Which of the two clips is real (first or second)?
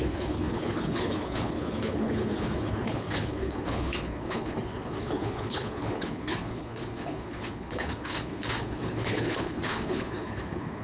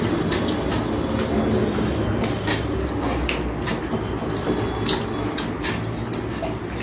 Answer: second